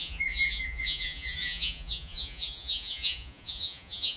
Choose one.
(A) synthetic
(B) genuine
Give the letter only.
A